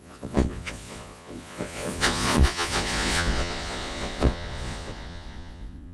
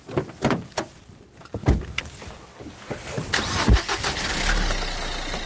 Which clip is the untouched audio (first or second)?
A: second